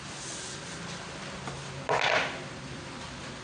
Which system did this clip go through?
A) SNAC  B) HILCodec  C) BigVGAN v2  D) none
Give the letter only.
D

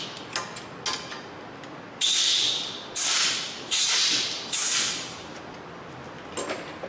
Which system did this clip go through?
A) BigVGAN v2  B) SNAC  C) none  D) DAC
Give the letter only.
C